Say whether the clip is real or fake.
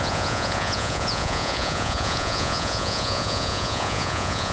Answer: fake